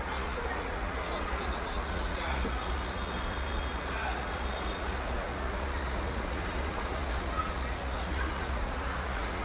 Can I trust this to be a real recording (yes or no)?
no